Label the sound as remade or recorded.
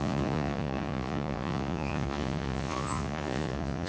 remade